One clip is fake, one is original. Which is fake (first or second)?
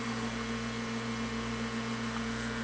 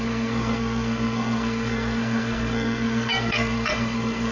second